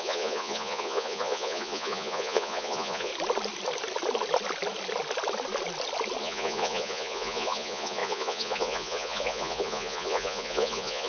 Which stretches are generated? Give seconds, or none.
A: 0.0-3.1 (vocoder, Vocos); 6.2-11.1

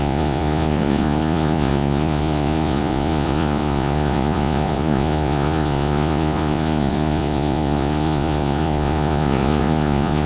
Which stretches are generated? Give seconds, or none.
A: 0.0-10.3 (vocoder, Vocos)

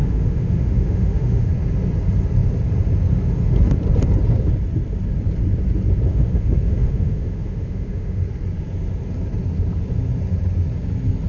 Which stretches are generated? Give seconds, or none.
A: 0.0-1.5 (autoencoder, DAC-VAE); 6.1-8.2